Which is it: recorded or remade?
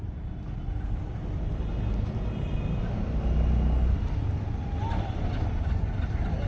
recorded